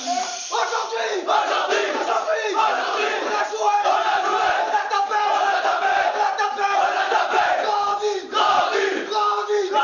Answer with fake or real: fake